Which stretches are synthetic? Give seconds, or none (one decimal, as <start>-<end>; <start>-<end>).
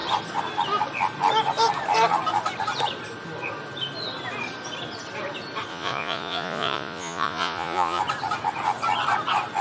5.7-8.0